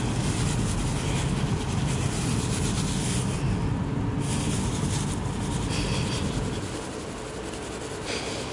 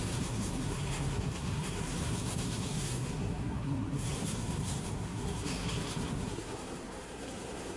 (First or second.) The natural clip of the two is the first